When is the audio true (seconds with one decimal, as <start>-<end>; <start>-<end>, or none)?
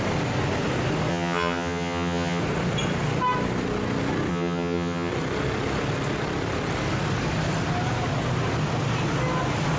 0.0-1.1; 2.4-4.3; 5.1-9.8